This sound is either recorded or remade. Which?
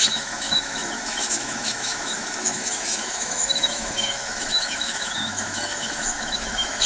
remade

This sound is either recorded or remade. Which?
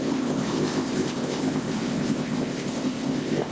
remade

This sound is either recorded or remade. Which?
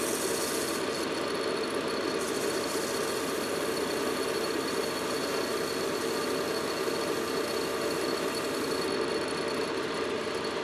recorded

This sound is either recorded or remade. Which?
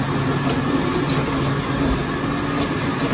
recorded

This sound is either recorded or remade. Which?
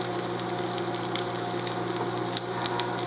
recorded